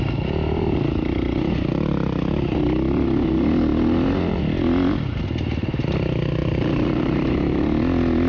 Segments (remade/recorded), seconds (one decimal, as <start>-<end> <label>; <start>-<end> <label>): 0.0-6.4 recorded; 6.4-7.6 remade; 7.6-8.3 recorded